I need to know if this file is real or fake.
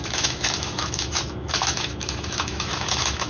fake